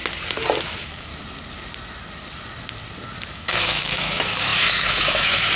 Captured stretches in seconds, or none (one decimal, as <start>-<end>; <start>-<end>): 0.0-0.6; 1.1-3.3